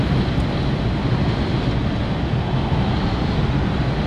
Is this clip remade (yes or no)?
no